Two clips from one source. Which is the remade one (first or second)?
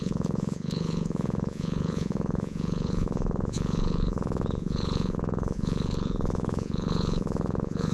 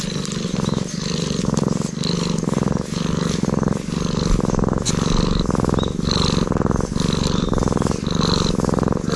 first